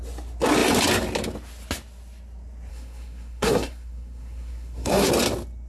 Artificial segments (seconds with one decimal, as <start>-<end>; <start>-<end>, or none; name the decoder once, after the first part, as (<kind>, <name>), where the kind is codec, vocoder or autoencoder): 2.7-5.1 (codec, SNAC)